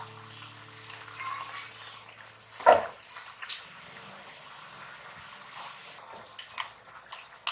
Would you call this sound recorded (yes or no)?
yes